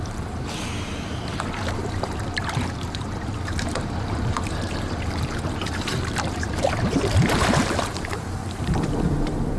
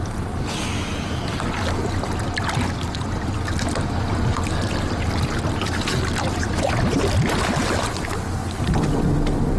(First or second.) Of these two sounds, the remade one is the first